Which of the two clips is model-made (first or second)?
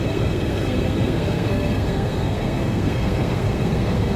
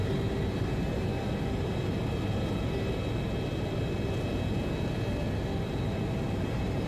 first